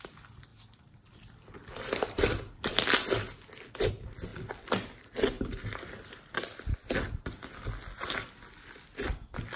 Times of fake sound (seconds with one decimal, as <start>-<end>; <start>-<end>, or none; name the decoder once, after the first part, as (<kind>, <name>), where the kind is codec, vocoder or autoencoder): none